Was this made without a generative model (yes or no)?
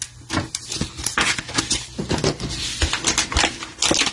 yes